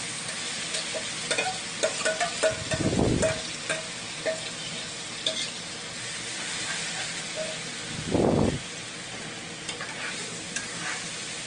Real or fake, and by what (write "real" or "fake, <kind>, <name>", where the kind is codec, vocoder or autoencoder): real